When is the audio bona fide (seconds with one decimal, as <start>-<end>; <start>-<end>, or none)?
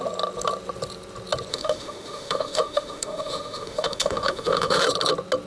0.0-1.5; 4.8-5.5